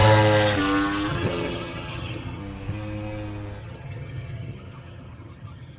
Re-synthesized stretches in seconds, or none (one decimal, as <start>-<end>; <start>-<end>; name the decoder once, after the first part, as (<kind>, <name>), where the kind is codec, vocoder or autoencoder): 1.1-2.4 (vocoder, HiFi-GAN); 3.6-5.8